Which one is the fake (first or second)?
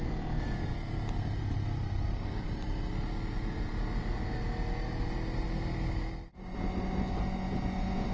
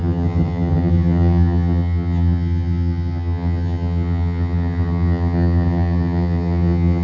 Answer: second